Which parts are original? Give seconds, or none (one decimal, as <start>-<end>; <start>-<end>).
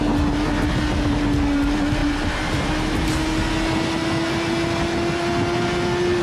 0.0-2.0; 2.7-6.2